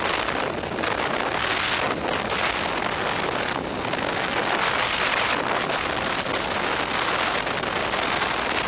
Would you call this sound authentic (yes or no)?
yes